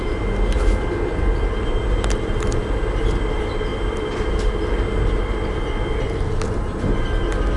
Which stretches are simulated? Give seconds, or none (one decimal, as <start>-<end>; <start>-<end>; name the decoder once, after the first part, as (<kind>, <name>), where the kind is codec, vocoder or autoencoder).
none